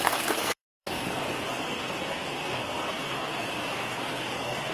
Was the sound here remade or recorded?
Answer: remade